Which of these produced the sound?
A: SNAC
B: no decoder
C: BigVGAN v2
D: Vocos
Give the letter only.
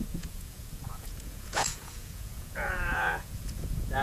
D